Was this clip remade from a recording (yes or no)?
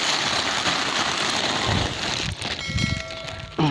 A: no